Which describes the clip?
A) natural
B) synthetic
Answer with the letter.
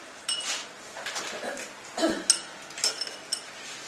A